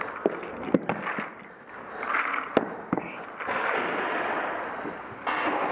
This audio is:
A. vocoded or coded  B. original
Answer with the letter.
B